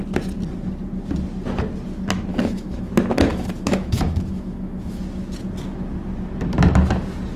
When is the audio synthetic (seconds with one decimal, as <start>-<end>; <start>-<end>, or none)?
2.3-2.9; 3.3-5.0